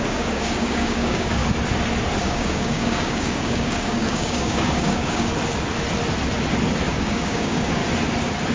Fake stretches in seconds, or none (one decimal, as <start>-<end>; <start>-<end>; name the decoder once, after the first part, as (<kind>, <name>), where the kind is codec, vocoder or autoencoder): 0.0-1.4 (codec, DAC); 2.2-5.3; 6.9-7.8